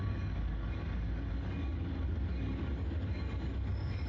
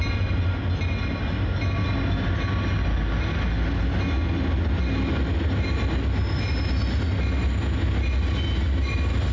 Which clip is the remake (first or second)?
first